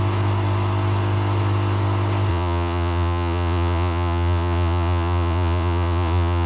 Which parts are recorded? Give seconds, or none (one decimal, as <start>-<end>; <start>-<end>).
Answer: 0.0-2.3